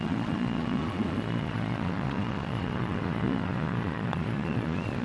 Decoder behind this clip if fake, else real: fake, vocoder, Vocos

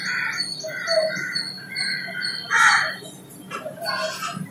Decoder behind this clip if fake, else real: real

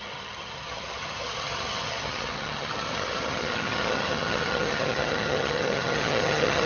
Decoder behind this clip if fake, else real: fake, vocoder, HiFi-GAN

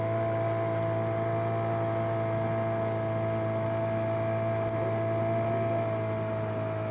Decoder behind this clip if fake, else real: real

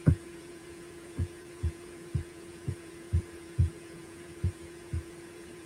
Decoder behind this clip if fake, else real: fake, vocoder, Vocos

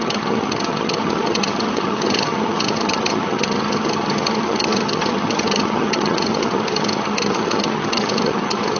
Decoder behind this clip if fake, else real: fake, vocoder, HiFi-GAN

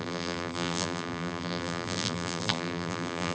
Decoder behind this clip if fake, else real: fake, vocoder, BigVGAN v2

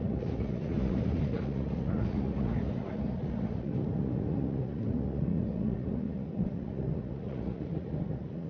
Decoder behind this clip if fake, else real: fake, vocoder, Vocos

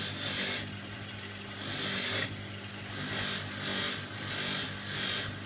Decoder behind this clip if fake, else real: real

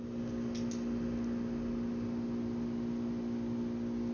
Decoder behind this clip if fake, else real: real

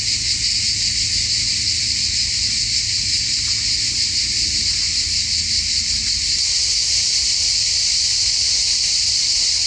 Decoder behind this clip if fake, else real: real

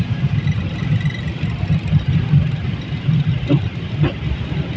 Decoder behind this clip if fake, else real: real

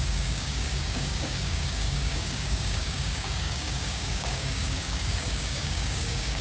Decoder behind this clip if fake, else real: fake, codec, DAC